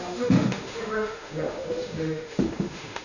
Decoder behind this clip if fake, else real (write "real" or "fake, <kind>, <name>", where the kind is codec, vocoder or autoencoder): fake, autoencoder, DAC-VAE